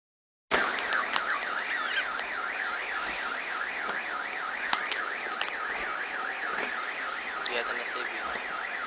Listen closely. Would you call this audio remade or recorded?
recorded